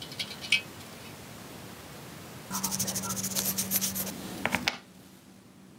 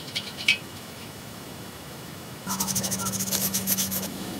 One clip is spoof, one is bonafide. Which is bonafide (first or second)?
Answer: first